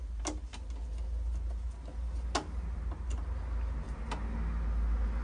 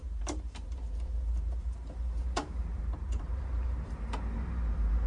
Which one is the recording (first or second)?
first